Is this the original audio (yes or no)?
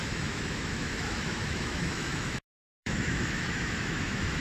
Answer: no